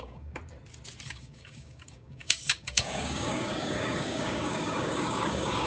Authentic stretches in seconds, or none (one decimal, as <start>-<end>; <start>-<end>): 0.4-1.1